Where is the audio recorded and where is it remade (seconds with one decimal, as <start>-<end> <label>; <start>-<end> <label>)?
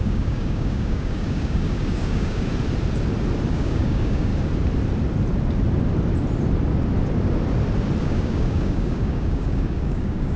0.0-2.5 remade; 2.5-3.5 recorded; 3.5-4.3 remade; 4.3-8.0 recorded; 8.0-10.4 remade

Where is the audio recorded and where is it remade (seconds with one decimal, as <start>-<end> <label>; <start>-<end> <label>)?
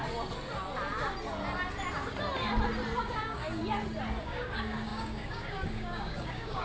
0.0-3.0 recorded; 3.0-3.6 remade; 3.6-4.2 recorded; 4.2-6.6 remade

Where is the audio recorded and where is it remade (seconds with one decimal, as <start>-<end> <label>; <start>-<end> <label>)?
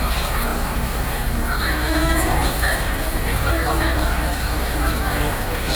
0.0-5.8 remade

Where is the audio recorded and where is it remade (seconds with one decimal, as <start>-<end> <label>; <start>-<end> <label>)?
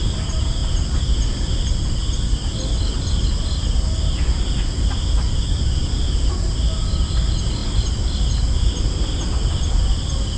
0.0-10.4 recorded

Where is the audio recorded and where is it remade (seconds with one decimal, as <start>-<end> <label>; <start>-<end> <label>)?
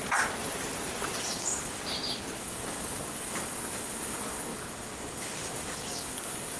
0.0-1.2 recorded; 1.2-1.8 remade; 1.8-2.4 recorded; 2.4-6.6 remade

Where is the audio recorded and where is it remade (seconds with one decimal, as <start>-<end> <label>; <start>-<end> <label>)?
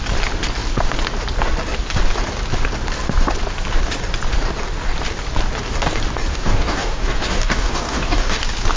0.0-6.3 recorded; 6.3-8.4 remade; 8.4-8.8 recorded